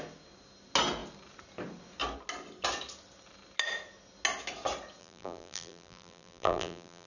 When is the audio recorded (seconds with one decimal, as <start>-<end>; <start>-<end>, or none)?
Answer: 0.0-5.0